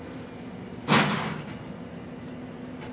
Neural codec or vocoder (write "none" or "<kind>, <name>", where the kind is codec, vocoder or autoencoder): none